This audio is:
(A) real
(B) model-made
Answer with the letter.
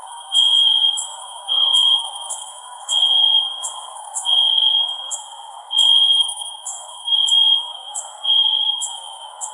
B